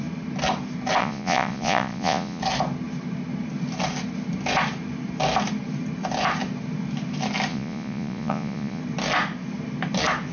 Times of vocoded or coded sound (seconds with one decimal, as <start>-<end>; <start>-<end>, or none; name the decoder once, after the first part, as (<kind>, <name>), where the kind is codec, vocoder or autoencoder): 1.0-2.4 (vocoder, Vocos); 7.5-8.8